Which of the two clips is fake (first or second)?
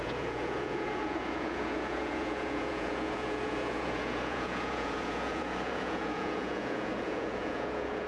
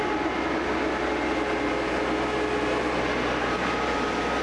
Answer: first